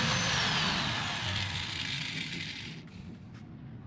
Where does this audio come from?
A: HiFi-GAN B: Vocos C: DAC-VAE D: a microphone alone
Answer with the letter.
D